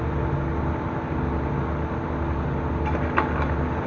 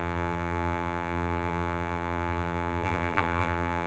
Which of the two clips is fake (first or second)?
second